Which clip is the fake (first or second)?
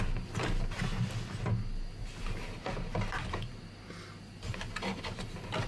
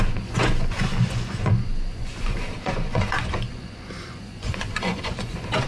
second